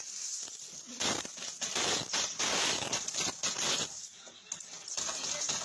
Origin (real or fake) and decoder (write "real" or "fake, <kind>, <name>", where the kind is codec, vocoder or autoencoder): real